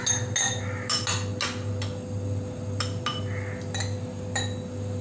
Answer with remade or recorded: recorded